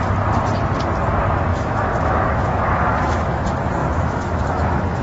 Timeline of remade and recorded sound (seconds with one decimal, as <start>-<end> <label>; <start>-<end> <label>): 0.0-1.5 recorded; 1.5-3.4 remade; 3.4-3.8 recorded; 3.8-5.0 remade

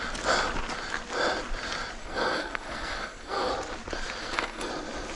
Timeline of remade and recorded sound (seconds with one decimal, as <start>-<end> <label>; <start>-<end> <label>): 0.0-2.0 recorded; 2.0-3.5 remade; 3.5-4.2 recorded; 4.2-4.7 remade; 4.7-5.2 recorded

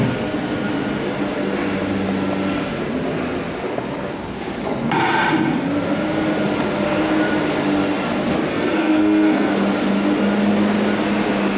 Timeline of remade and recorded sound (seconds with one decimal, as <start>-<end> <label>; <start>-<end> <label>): 0.0-8.5 recorded; 8.5-9.5 remade; 9.5-11.6 recorded

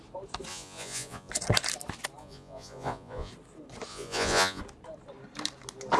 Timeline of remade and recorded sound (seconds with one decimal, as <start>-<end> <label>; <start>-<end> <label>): 0.0-0.5 recorded; 0.5-1.3 remade; 1.3-2.2 recorded; 2.2-3.3 remade; 3.3-3.9 recorded; 3.9-4.6 remade; 4.6-6.0 recorded